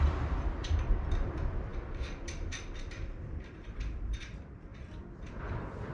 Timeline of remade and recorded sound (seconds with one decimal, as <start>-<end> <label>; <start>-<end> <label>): 0.0-4.7 remade; 4.7-5.9 recorded